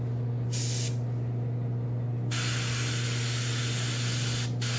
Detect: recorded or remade recorded